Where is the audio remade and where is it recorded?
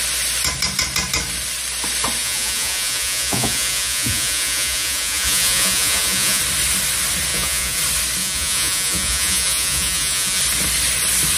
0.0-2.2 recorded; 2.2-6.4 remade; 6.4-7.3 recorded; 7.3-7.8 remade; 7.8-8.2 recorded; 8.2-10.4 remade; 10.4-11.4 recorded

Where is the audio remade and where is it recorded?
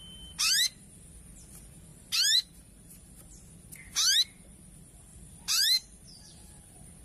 0.0-1.9 recorded; 1.9-3.2 remade; 3.2-5.1 recorded; 5.1-7.0 remade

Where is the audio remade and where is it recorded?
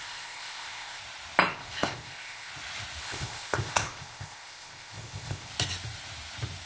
0.0-1.0 remade; 1.0-1.5 recorded; 1.5-2.5 remade; 2.5-3.0 recorded; 3.0-5.5 remade; 5.5-6.7 recorded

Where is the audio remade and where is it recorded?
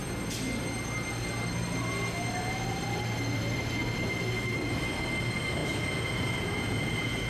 0.0-5.6 recorded; 5.6-7.3 remade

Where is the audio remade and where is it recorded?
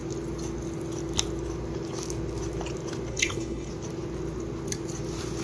0.0-3.1 recorded; 3.1-3.7 remade; 3.7-5.4 recorded